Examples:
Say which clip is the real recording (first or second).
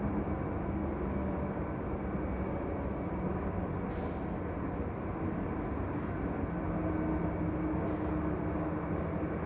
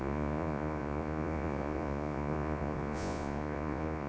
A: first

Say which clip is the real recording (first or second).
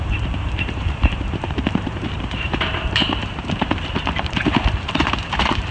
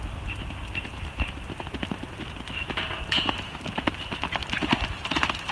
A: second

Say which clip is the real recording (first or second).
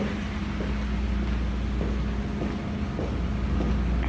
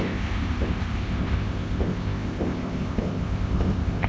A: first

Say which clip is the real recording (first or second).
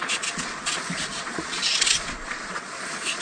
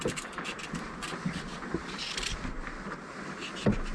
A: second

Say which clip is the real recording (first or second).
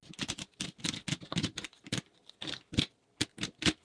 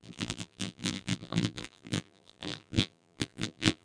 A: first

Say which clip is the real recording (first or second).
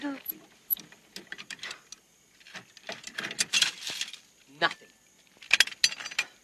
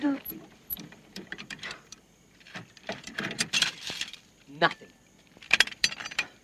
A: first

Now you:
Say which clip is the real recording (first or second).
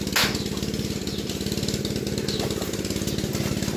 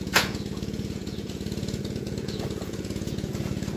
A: first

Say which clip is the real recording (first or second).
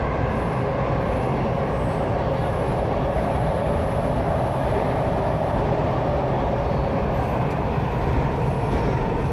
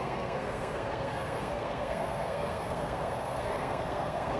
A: first